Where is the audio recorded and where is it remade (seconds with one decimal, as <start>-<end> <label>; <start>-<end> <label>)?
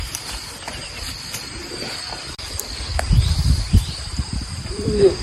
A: 0.0-0.8 remade; 0.8-3.3 recorded; 3.3-5.2 remade